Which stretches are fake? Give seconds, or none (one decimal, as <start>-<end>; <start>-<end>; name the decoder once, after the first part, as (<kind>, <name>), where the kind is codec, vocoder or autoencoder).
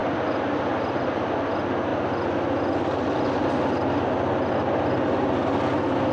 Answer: none